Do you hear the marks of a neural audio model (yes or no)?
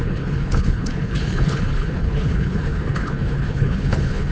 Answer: yes